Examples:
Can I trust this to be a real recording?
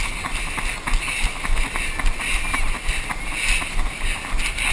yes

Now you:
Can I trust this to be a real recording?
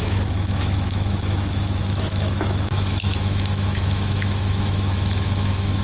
no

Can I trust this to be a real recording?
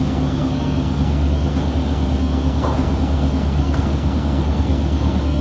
no